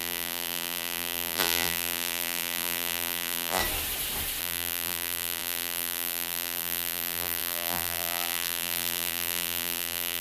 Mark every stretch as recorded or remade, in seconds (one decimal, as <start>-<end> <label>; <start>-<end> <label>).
0.0-3.6 remade; 3.6-4.4 recorded; 4.4-10.2 remade